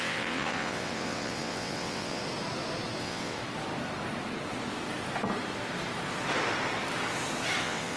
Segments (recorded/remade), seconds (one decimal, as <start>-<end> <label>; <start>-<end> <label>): 0.0-2.2 remade; 2.2-3.0 recorded; 3.0-3.4 remade; 3.4-7.6 recorded; 7.6-8.0 remade